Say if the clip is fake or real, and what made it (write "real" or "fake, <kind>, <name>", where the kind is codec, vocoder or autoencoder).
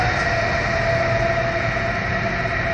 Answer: real